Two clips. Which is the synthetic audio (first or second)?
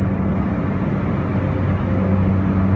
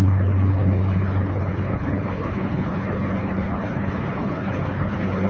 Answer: second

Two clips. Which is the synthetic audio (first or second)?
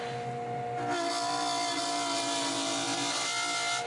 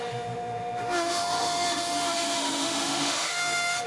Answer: second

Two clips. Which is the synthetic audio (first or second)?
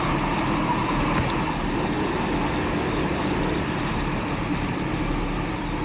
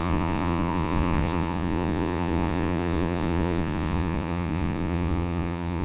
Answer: second